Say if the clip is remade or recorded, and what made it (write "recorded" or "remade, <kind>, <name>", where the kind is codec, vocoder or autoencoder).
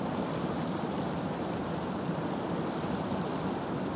recorded